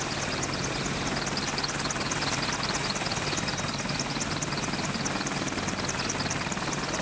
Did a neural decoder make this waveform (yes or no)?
no